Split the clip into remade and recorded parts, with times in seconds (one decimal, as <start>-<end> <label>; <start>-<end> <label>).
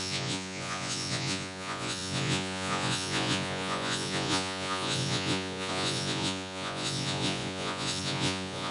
0.0-8.7 remade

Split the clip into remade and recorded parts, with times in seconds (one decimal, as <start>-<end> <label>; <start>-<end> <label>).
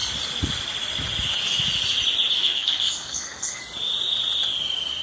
0.0-2.4 recorded; 2.4-3.6 remade; 3.6-5.0 recorded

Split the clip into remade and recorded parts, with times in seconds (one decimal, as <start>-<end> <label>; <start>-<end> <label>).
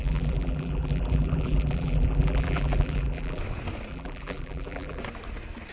0.0-3.4 remade; 3.4-3.9 recorded; 3.9-5.0 remade; 5.0-5.7 recorded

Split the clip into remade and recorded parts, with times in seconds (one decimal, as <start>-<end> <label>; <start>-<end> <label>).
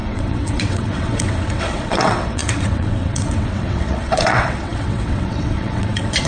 0.0-6.3 remade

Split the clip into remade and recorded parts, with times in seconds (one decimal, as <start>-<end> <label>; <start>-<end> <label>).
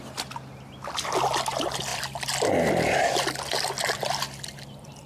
0.0-5.1 recorded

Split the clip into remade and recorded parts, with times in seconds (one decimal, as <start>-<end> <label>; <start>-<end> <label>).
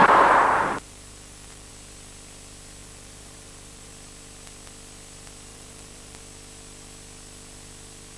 0.0-1.7 remade; 1.7-2.8 recorded; 2.8-3.9 remade; 3.9-5.5 recorded; 5.5-6.2 remade; 6.2-8.2 recorded